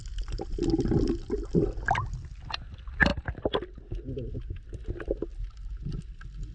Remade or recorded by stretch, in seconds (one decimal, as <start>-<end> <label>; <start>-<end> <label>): 0.0-5.3 recorded; 5.3-6.0 remade; 6.0-6.5 recorded